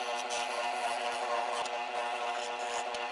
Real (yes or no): yes